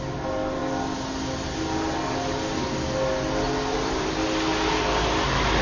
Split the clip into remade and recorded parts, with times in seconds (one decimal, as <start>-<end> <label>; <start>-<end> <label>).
0.0-5.6 recorded

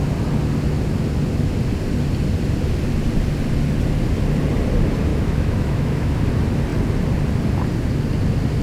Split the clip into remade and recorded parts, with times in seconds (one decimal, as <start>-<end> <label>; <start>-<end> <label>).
0.0-5.1 recorded; 5.1-6.2 remade; 6.2-8.6 recorded

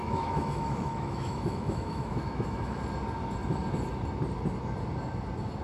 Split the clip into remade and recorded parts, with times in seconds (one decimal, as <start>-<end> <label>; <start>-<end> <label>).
0.0-2.8 remade; 2.8-5.6 recorded

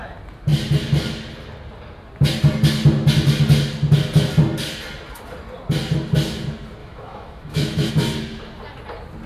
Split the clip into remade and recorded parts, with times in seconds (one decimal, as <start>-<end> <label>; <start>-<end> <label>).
0.0-6.8 recorded; 6.8-7.9 remade; 7.9-9.3 recorded

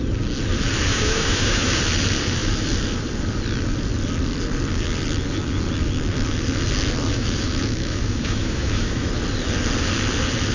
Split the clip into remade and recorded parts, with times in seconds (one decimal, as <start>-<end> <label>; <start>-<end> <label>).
0.0-0.9 recorded; 0.9-1.8 remade; 1.8-7.1 recorded; 7.1-9.1 remade; 9.1-10.5 recorded